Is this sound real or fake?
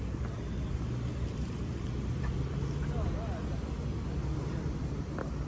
real